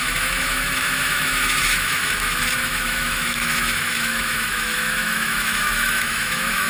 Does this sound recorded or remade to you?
remade